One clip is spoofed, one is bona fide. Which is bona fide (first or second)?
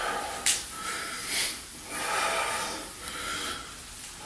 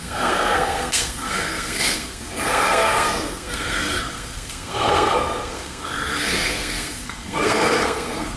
first